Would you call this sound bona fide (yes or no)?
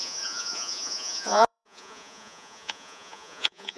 no